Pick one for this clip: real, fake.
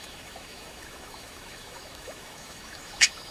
fake